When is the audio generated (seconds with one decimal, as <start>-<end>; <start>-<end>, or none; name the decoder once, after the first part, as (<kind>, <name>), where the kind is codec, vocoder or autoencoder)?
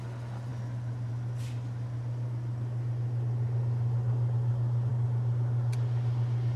none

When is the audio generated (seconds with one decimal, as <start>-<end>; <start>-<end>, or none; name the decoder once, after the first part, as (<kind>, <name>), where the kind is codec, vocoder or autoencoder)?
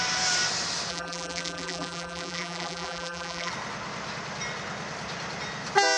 0.9-3.5 (vocoder, BigVGAN v2)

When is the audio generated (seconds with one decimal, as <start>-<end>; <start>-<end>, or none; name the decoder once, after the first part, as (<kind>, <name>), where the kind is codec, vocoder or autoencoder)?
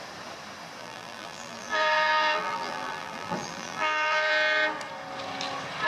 0.8-4.3 (vocoder, BigVGAN v2)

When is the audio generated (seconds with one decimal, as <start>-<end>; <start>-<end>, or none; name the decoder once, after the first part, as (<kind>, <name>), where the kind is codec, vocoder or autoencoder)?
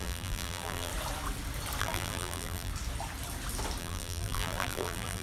0.0-0.9 (vocoder, BigVGAN v2); 1.8-2.7; 3.8-5.2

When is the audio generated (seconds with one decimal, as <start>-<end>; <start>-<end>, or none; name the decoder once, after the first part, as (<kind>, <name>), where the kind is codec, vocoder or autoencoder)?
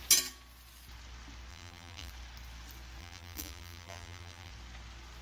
1.5-2.1 (vocoder, BigVGAN v2); 3.0-4.5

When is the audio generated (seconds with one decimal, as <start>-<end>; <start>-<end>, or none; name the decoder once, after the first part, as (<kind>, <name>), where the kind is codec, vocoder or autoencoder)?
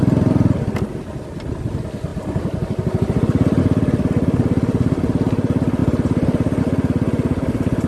2.1-3.6 (vocoder, BigVGAN v2); 5.8-6.6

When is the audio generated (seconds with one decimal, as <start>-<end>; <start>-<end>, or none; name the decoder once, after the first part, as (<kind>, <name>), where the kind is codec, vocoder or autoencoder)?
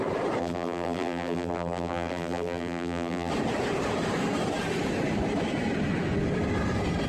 0.4-3.3 (vocoder, BigVGAN v2)